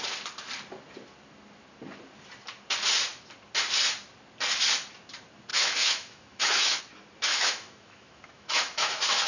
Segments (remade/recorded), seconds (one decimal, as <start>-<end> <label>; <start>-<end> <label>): 0.0-5.5 recorded; 5.5-6.8 remade; 6.8-7.3 recorded; 7.3-9.3 remade